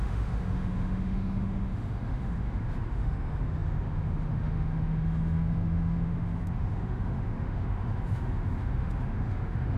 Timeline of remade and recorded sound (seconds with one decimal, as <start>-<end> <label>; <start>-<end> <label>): 0.0-9.8 remade